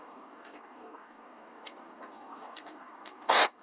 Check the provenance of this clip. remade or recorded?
remade